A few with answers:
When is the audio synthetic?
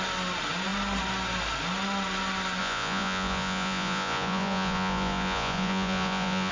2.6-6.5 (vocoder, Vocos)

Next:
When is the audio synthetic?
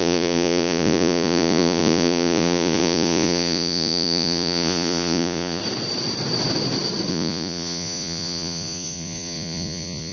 0.0-5.6 (vocoder, Vocos); 7.1-10.1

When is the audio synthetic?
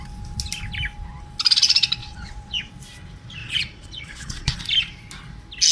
2.0-2.7 (vocoder, Vocos); 3.4-4.6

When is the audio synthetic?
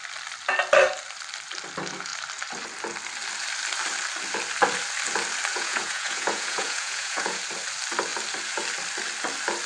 5.5-7.4 (vocoder, Vocos)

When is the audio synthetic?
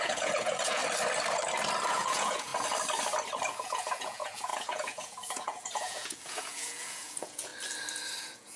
0.0-0.8 (vocoder, Vocos); 1.9-2.5; 3.5-7.5; 8.2-8.6